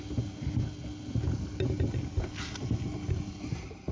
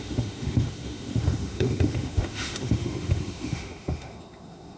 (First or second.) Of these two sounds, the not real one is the second